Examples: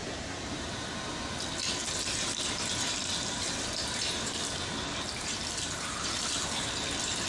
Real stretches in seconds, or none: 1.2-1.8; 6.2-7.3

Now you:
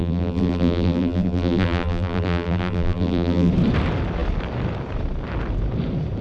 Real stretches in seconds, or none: 3.5-6.2

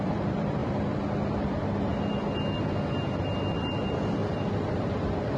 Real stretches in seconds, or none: 0.6-1.4; 1.9-3.2; 4.2-4.7

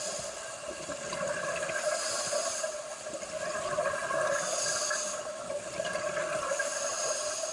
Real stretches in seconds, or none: 4.0-6.2

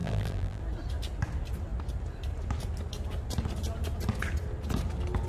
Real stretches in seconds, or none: 0.6-5.3

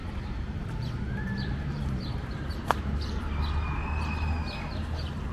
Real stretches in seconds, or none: 3.2-5.3